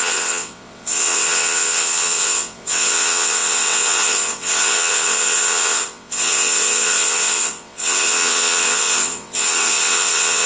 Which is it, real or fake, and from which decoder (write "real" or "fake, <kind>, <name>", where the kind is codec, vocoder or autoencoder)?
fake, vocoder, WaveNeXt